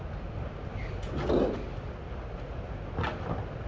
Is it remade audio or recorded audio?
recorded